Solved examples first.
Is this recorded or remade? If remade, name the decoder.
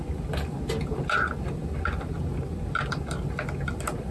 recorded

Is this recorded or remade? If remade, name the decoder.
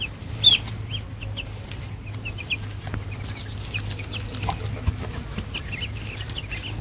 recorded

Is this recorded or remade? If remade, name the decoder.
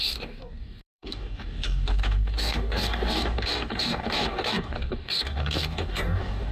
remade, codec, DAC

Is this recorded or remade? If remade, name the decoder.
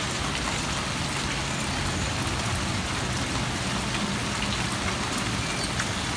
recorded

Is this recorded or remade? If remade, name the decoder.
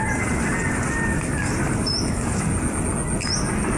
recorded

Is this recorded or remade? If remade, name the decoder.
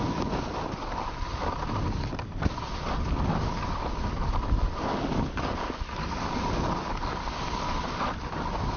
recorded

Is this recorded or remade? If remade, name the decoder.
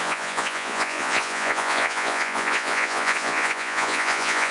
remade, vocoder, Vocos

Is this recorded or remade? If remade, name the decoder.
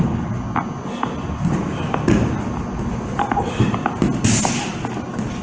recorded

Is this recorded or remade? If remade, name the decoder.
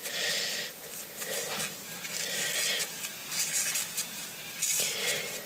recorded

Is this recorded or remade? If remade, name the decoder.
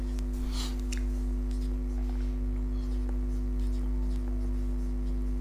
recorded